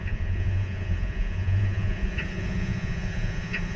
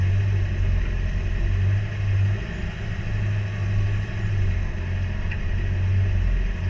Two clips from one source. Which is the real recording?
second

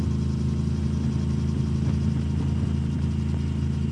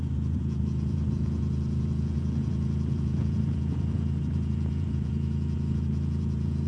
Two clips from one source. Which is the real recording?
first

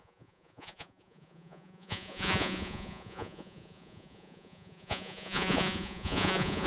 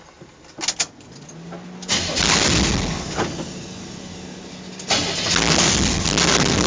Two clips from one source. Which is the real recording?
second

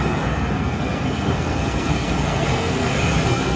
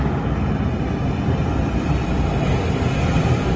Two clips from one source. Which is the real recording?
second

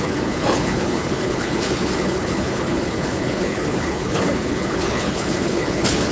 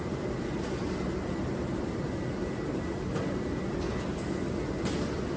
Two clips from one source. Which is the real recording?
second